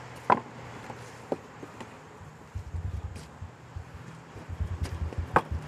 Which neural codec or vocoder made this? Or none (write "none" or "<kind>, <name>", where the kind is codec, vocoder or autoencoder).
none